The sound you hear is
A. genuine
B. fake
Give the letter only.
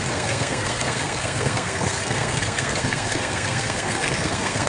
B